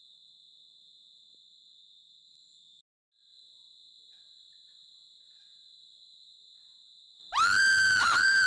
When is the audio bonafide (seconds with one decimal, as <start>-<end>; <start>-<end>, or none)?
none